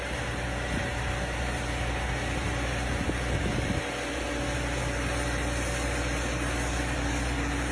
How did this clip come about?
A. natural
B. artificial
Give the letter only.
A